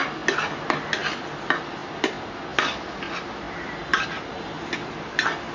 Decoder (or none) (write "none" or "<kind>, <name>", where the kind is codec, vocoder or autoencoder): none